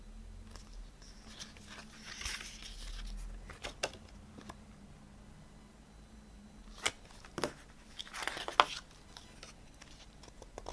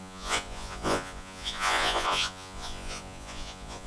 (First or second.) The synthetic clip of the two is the second